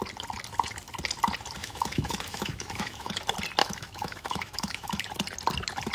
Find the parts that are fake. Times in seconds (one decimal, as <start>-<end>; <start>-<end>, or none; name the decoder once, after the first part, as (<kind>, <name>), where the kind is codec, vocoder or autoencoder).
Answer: 1.6-3.2 (autoencoder, DAC-VAE); 3.6-5.1